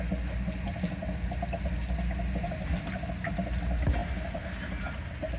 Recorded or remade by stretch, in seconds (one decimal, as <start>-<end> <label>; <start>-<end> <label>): 0.0-5.4 recorded